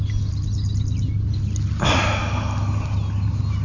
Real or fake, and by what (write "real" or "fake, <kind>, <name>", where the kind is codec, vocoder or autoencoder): real